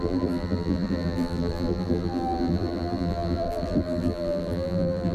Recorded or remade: remade